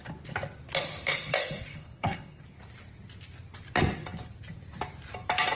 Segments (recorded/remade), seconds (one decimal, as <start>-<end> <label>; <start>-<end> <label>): 0.0-1.7 recorded; 1.7-2.4 remade; 2.4-5.5 recorded